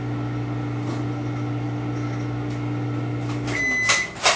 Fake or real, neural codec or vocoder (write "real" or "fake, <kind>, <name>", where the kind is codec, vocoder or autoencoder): real